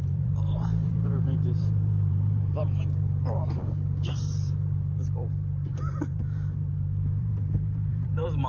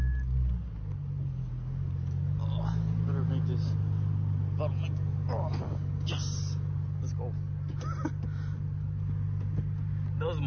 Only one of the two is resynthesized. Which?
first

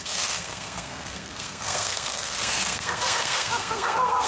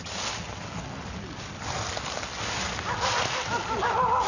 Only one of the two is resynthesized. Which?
first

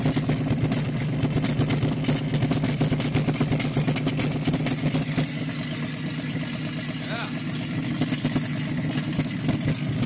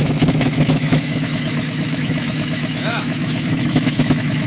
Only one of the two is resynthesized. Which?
second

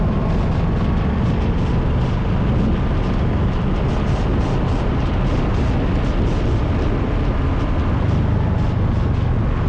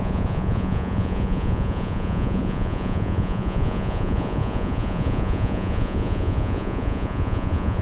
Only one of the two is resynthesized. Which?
second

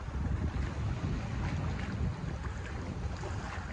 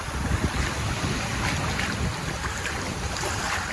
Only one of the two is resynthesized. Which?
second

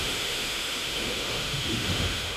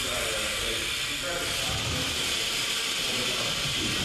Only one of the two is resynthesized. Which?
first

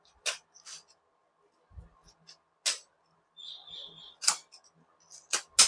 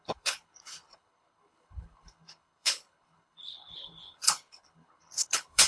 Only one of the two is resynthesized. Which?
second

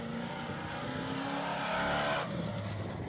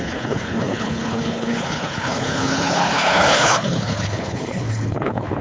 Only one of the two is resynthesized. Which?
second